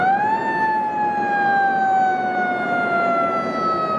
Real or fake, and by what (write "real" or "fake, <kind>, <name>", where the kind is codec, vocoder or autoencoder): real